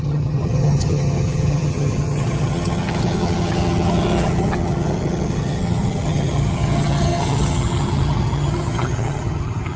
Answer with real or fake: fake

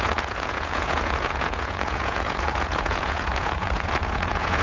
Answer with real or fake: fake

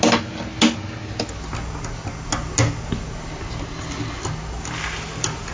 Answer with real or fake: real